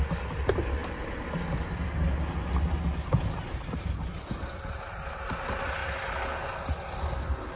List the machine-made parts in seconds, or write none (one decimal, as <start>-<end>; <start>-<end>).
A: none